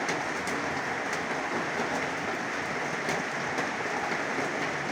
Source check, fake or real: real